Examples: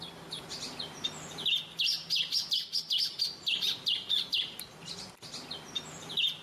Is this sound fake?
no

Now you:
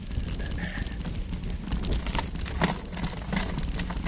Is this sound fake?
no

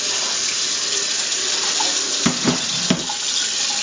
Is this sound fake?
no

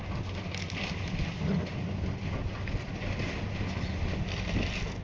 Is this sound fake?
no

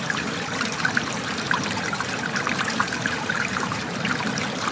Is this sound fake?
yes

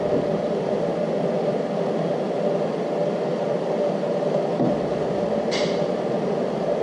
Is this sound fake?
yes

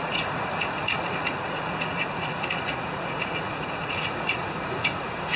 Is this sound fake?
yes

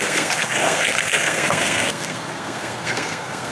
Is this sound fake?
yes